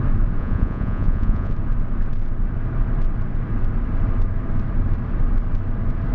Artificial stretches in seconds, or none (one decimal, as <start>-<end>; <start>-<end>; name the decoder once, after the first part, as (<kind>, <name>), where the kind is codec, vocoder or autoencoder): 0.4-1.5 (vocoder, Vocos)

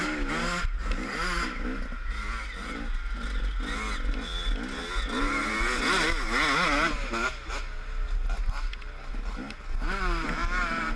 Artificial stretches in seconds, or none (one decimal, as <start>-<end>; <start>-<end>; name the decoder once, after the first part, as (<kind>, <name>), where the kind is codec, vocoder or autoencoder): none

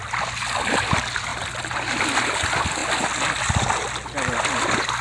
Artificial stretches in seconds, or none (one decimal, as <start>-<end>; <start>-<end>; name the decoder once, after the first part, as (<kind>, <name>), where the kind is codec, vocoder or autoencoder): none

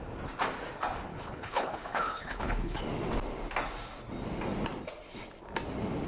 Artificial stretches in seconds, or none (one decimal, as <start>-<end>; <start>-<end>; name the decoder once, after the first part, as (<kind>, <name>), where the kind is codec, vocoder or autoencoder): 1.1-2.8 (codec, HILCodec)

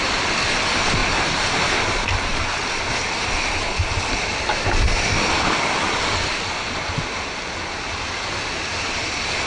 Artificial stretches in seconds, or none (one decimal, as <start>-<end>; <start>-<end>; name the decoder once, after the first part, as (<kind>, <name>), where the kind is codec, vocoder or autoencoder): none

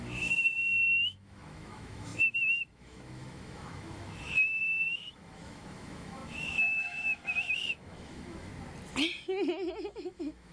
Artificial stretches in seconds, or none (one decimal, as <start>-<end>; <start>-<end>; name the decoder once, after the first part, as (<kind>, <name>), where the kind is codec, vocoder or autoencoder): 0.0-8.5 (autoencoder, DAC-VAE); 9.7-10.5

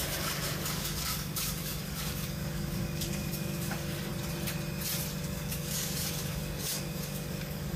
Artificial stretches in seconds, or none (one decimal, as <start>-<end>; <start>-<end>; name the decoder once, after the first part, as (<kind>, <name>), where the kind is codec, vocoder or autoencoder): 0.0-4.1 (codec, DAC); 5.2-7.8

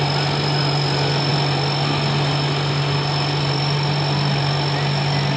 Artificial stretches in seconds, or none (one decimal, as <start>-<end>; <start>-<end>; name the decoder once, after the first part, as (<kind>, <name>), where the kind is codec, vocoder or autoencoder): none